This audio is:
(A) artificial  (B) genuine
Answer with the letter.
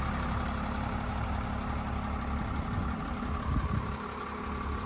B